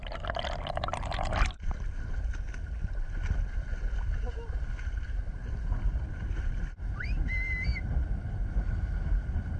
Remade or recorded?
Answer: recorded